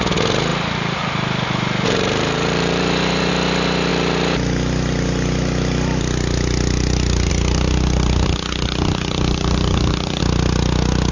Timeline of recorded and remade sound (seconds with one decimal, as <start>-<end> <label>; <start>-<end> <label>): 0.0-0.5 recorded; 0.5-3.3 remade; 3.3-11.1 recorded